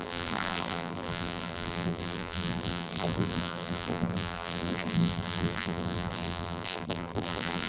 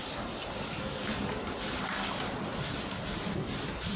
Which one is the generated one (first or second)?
first